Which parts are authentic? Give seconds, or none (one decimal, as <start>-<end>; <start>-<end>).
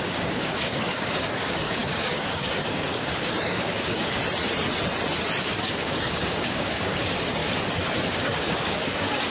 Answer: 4.2-5.4; 7.4-8.1